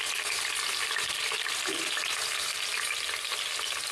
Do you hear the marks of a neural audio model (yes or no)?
no